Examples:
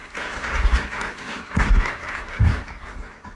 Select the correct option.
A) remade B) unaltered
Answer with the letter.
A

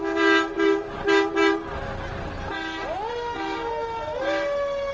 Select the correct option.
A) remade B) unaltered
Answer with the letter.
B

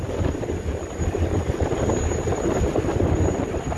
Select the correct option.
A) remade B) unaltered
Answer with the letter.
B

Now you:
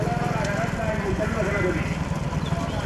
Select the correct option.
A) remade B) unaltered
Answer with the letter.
B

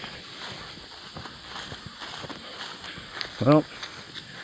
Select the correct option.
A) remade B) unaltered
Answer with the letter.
B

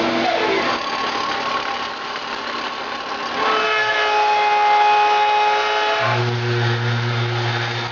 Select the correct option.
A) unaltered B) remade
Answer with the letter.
A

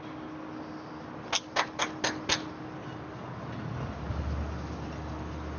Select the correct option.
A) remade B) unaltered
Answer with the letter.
B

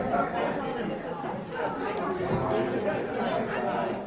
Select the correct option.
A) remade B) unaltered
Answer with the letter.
B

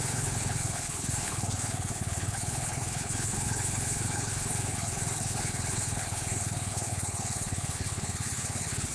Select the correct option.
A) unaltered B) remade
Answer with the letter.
B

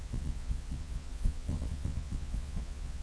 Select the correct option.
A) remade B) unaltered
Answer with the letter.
A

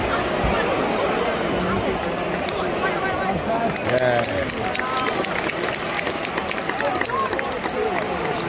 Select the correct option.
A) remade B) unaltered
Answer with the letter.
B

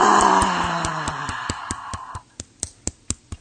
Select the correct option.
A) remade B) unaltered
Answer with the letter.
B